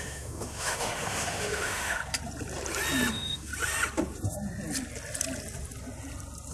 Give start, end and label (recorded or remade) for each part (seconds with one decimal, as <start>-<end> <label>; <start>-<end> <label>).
0.0-2.0 remade; 2.0-3.1 recorded; 3.1-3.5 remade; 3.5-6.5 recorded